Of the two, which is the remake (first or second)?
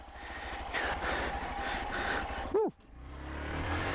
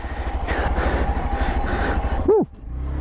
first